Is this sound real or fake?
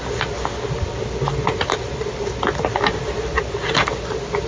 real